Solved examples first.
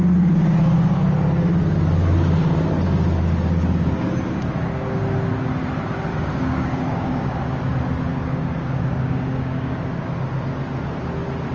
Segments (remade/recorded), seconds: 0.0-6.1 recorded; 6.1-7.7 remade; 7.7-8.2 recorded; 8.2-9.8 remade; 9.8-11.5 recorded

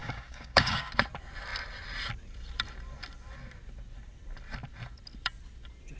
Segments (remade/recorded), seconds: 0.0-0.9 remade; 0.9-6.0 recorded

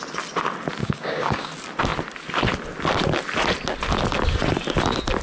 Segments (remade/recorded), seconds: 0.0-0.8 recorded; 0.8-1.5 remade; 1.5-5.2 recorded

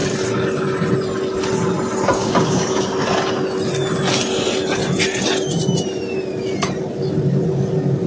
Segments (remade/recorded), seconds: 0.0-2.2 recorded; 2.2-2.8 remade; 2.8-8.1 recorded

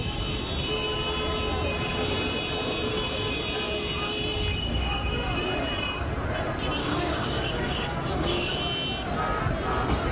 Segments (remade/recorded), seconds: 0.0-4.5 recorded; 4.5-5.1 remade; 5.1-6.8 recorded; 6.8-8.6 remade; 8.6-10.1 recorded

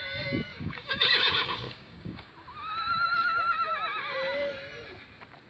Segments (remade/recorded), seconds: 0.0-0.5 recorded; 0.5-2.3 remade; 2.3-5.5 recorded